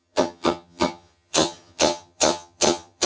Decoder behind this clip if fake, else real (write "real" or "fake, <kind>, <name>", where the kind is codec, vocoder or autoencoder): fake, vocoder, HiFi-GAN